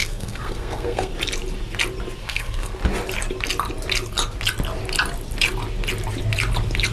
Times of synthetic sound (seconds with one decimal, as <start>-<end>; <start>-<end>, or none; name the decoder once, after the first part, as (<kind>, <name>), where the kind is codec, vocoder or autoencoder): 0.0-1.1 (codec, SNAC); 2.2-2.8